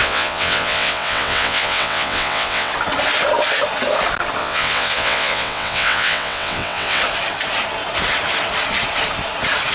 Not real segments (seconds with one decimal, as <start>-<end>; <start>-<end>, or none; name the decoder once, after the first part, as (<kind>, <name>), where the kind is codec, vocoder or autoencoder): 0.0-2.7 (vocoder, WaveNeXt); 4.4-7.0